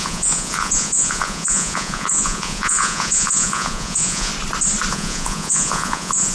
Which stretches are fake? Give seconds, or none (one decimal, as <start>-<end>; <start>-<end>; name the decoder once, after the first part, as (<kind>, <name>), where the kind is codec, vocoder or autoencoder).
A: 0.0-4.3 (vocoder, Vocos); 4.9-6.3